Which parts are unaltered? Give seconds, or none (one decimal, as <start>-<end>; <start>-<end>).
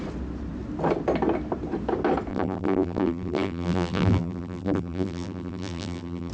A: 0.0-2.3